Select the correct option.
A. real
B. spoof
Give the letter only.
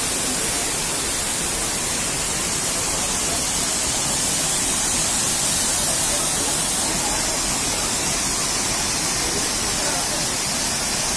A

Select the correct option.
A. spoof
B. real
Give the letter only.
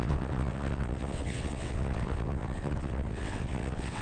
A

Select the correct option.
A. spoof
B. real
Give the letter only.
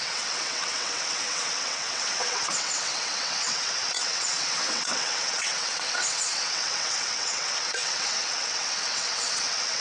A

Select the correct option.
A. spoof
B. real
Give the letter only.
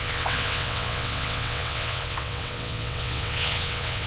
A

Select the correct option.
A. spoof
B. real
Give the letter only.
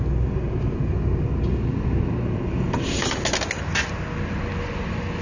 B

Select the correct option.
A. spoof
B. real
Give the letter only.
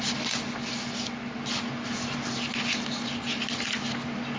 B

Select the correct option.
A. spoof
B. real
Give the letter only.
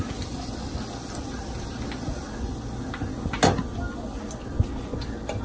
B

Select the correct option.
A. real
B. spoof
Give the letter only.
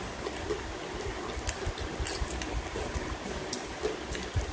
A